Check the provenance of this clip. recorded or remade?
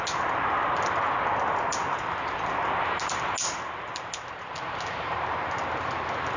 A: recorded